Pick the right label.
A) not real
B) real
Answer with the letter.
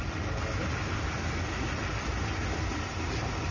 B